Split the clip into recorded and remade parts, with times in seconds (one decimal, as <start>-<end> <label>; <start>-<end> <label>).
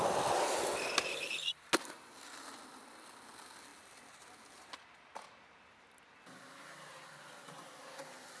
0.0-8.4 recorded